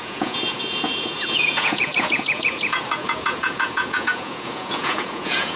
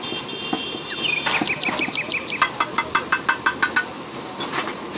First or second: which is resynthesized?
first